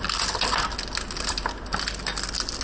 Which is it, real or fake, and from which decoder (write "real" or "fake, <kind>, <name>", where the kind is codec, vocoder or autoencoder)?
real